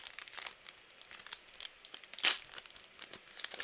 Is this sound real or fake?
real